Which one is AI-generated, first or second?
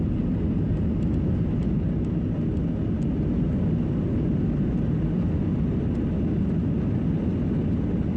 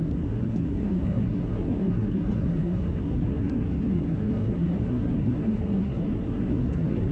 second